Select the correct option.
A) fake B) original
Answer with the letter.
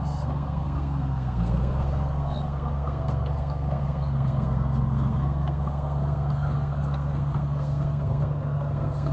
A